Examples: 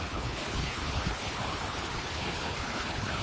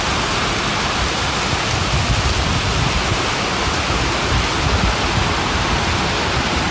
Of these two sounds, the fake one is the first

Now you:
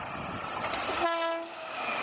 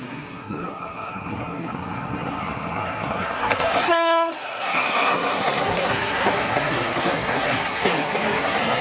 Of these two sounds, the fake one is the second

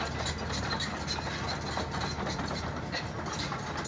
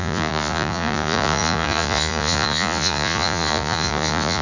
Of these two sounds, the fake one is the second